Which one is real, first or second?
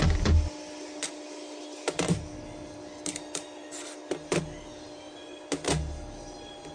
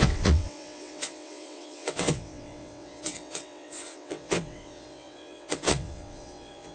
first